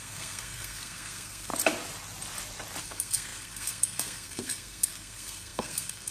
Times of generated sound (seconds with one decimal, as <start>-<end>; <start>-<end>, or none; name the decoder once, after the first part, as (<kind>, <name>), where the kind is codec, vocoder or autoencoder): 0.0-1.5 (codec, SNAC); 2.8-6.1